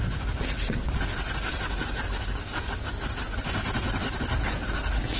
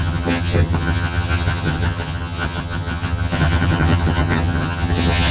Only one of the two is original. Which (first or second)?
first